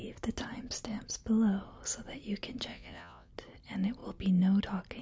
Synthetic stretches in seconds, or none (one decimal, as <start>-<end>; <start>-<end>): 2.7-3.3

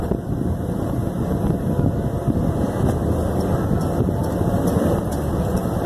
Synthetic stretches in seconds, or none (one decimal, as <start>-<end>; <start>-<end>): 0.0-1.0; 4.0-5.9

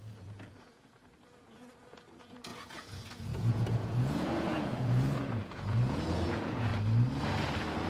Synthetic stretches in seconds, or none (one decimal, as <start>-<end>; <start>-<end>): 0.0-6.7

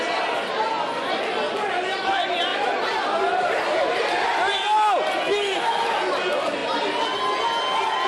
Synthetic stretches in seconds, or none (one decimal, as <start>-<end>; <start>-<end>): none

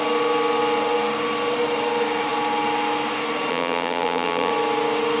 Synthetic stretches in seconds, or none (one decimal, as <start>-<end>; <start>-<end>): 3.5-4.5

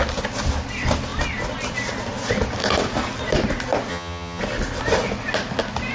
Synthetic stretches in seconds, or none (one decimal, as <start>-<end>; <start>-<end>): 3.9-4.4

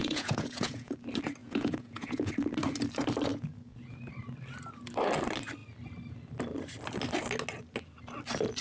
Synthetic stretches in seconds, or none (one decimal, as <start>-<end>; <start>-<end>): 0.0-0.9; 1.4-2.3; 3.3-4.1

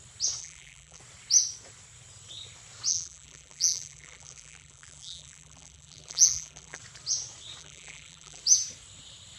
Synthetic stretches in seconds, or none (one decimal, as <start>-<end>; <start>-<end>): 0.4-1.0; 2.9-6.8; 7.6-8.4